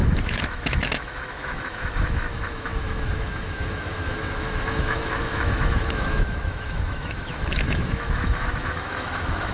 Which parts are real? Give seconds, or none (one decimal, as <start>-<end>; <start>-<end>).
none